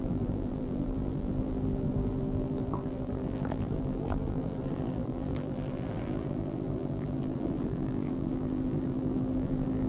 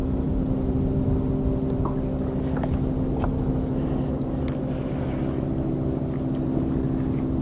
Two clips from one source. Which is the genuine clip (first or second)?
second